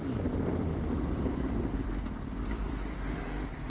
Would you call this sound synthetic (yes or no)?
no